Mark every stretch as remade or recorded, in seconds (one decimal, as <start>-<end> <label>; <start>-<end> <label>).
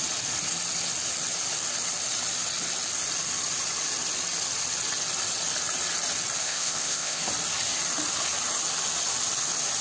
0.0-6.4 recorded; 6.4-7.2 remade; 7.2-9.8 recorded